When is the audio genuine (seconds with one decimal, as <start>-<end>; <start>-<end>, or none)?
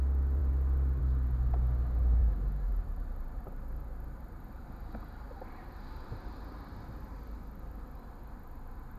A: 0.0-2.2; 7.2-9.0